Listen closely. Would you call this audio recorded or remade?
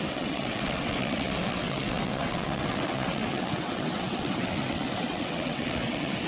remade